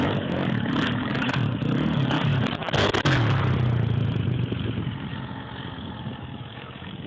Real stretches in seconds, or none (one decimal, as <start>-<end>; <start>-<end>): 2.3-6.2